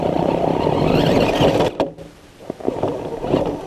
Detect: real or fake real